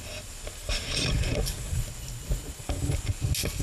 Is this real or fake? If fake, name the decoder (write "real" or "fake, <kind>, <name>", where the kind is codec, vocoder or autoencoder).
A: real